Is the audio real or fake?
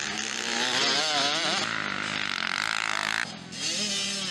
real